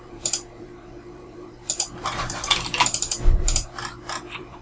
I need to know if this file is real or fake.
fake